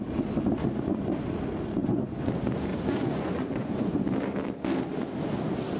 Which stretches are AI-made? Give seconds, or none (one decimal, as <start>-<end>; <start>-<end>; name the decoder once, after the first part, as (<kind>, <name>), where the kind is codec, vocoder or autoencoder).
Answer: 1.8-2.3 (vocoder, Vocos); 2.7-3.9